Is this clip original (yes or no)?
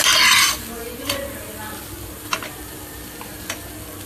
yes